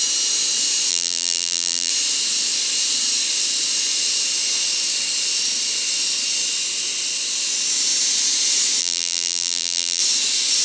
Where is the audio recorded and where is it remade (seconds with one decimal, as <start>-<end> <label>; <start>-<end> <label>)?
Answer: 0.0-0.9 recorded; 0.9-1.9 remade; 1.9-8.8 recorded; 8.8-10.0 remade; 10.0-10.6 recorded